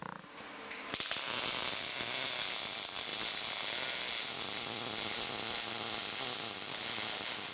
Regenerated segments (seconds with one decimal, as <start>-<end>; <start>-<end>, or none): none